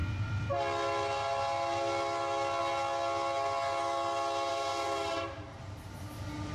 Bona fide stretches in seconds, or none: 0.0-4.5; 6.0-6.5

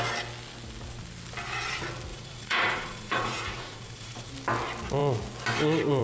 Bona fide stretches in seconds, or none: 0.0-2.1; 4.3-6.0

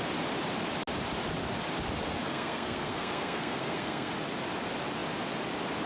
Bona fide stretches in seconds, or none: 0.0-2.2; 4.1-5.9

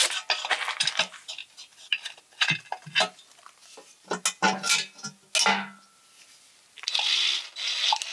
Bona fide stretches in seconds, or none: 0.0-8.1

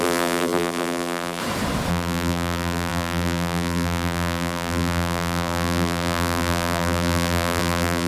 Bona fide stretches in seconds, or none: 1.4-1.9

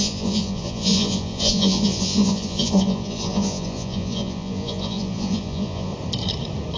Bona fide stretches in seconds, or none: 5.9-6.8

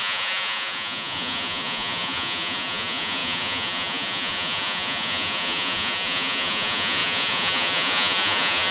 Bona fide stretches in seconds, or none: none